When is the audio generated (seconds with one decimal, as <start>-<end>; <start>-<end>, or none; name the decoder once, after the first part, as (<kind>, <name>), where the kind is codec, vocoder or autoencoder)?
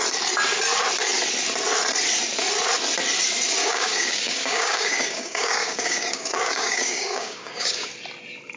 3.6-7.9 (codec, DAC)